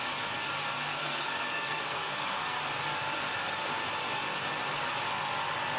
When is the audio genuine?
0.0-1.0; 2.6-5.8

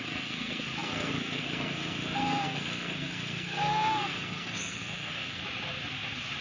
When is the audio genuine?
5.4-6.4